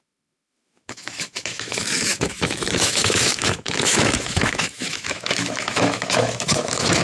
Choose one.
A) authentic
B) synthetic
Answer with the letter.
B